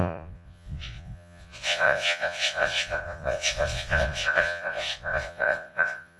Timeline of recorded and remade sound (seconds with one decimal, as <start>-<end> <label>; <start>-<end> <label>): 0.0-6.2 remade